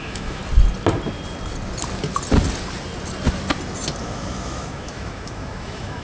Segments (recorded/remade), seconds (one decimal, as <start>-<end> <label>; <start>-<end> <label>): 0.0-0.4 remade; 0.4-4.0 recorded; 4.0-6.0 remade

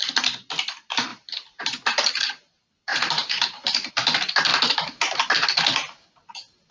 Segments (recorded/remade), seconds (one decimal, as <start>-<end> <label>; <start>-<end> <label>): 0.0-2.9 recorded; 2.9-3.9 remade; 3.9-6.7 recorded

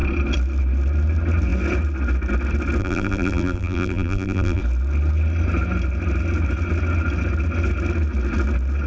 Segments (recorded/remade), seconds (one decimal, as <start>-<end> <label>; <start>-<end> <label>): 0.0-2.8 recorded; 2.8-4.6 remade; 4.6-8.9 recorded

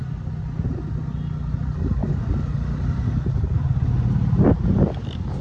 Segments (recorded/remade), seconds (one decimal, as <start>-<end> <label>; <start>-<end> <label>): 0.0-5.4 recorded

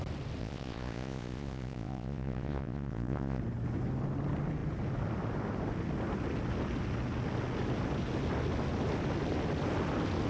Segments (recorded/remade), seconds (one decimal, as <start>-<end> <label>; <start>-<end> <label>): 0.0-0.4 recorded; 0.4-3.4 remade; 3.4-10.3 recorded

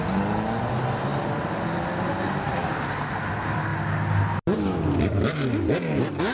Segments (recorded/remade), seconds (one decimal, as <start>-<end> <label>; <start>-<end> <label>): 0.0-6.3 recorded